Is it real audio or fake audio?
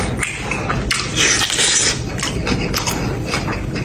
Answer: real